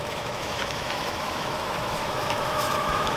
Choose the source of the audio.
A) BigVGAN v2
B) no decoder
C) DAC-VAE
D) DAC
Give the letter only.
C